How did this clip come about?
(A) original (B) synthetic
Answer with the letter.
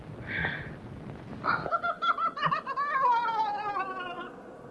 A